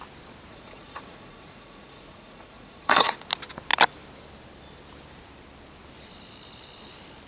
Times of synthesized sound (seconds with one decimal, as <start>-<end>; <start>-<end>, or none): 0.5-3.1